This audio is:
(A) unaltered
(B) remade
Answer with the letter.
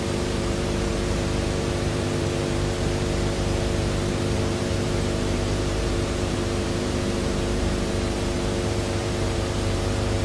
B